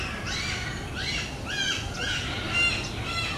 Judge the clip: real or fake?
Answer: real